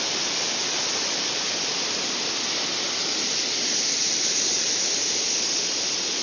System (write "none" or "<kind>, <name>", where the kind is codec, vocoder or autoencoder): none